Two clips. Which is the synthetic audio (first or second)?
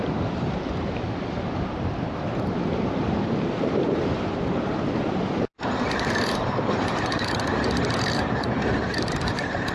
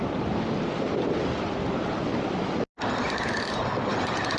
first